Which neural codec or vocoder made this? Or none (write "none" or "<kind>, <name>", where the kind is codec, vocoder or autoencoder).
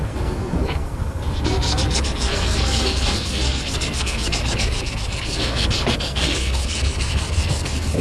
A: codec, SNAC